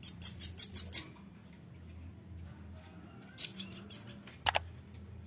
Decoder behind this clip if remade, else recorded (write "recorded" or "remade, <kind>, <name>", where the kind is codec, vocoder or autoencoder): recorded